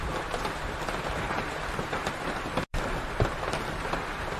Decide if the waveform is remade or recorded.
recorded